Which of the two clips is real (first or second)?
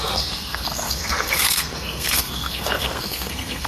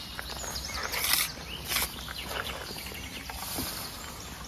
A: second